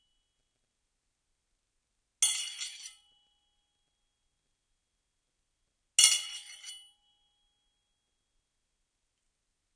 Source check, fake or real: real